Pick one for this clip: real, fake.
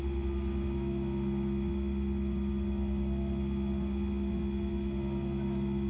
real